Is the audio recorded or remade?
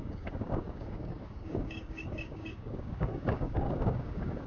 remade